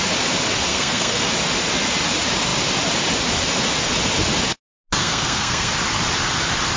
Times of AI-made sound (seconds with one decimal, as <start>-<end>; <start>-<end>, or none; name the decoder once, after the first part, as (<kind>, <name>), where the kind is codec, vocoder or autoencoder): 0.7-1.2 (codec, SNAC); 5.0-5.7